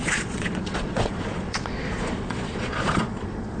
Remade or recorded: remade